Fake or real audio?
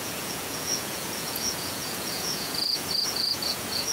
fake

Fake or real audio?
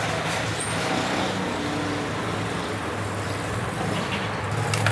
real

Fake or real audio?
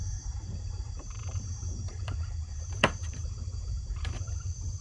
fake